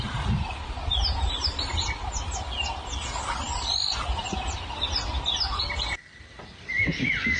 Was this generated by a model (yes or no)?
no